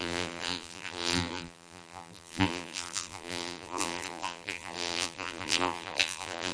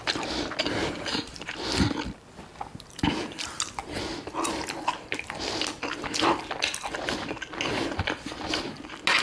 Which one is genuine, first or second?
second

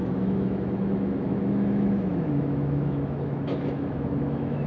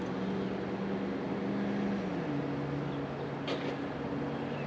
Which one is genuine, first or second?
second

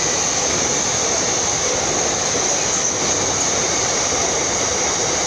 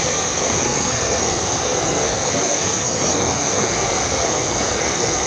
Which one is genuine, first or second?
first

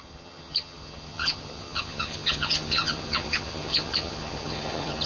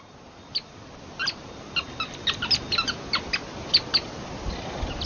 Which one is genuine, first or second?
second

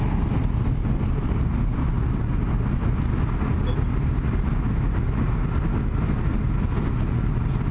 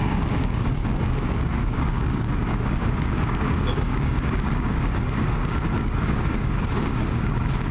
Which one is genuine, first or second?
first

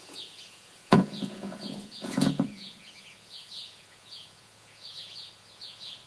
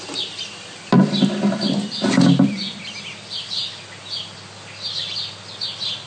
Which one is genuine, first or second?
second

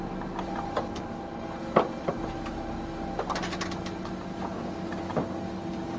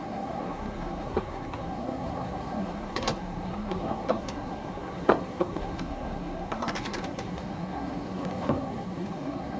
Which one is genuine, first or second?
first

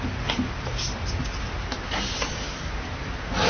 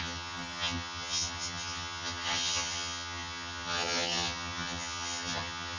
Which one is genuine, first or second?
first